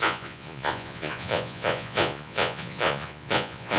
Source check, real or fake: fake